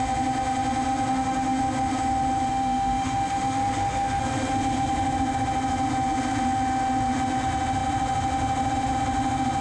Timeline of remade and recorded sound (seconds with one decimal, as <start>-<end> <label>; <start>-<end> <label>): 0.0-1.1 recorded; 1.1-1.6 remade; 1.6-2.5 recorded; 2.5-4.2 remade; 4.2-9.6 recorded